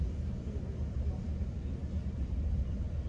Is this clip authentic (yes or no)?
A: yes